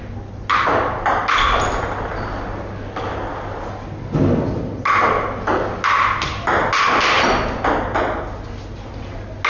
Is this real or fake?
real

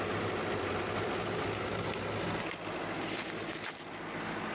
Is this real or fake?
real